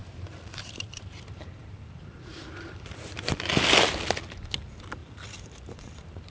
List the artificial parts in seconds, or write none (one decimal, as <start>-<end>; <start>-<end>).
0.0-1.2; 1.6-3.5; 5.0-6.3